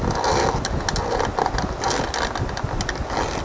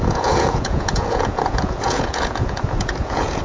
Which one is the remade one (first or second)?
second